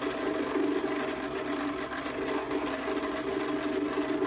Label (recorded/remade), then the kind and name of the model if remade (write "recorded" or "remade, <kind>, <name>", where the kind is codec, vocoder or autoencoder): recorded